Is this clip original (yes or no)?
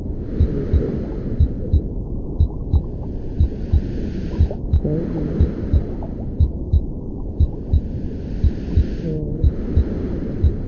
yes